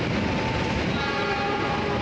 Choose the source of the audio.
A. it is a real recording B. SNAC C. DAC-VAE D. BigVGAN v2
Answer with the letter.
D